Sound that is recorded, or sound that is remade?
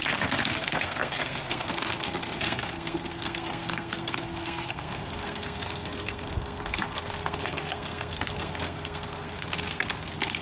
remade